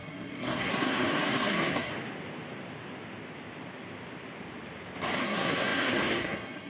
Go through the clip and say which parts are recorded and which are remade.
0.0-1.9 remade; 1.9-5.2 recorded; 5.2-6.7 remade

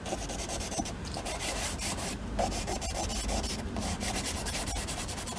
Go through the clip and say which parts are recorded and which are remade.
0.0-3.1 remade; 3.1-4.2 recorded; 4.2-5.4 remade